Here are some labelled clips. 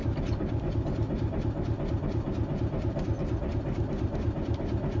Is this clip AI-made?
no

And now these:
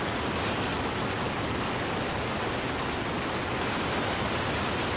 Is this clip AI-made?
no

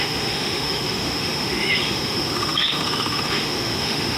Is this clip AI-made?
yes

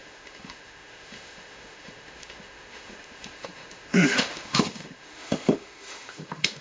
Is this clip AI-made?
yes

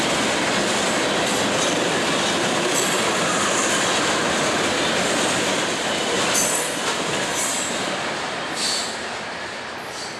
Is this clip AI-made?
yes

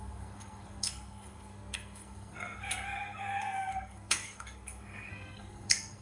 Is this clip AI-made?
yes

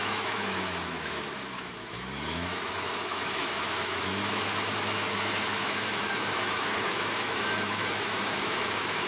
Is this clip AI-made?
yes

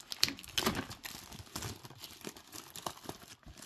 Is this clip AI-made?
no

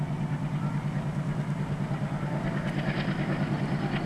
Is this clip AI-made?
no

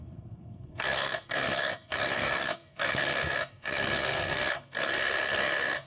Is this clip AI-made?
yes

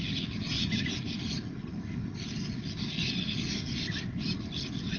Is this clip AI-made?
no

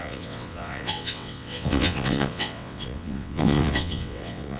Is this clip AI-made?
yes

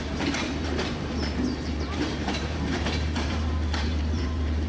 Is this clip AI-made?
yes